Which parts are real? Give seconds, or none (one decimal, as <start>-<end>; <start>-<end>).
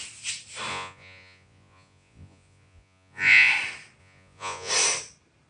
0.0-0.7; 3.5-4.0; 4.7-5.5